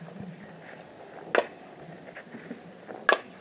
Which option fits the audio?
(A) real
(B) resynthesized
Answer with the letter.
A